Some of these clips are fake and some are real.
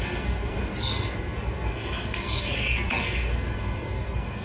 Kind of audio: fake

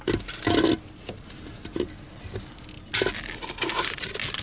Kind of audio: real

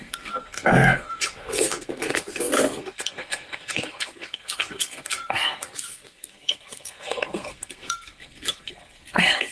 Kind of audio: fake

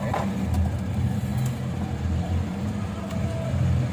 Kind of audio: real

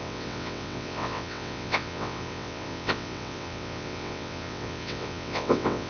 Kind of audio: fake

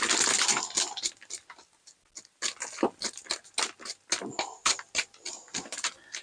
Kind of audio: real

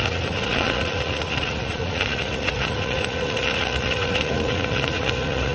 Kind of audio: fake